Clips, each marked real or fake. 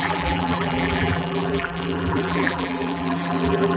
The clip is fake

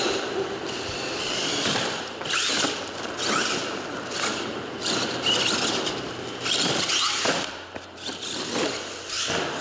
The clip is fake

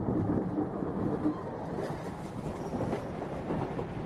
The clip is real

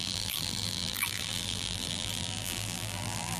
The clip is fake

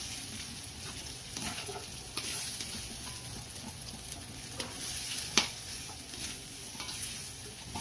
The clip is fake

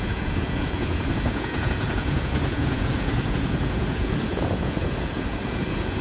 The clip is fake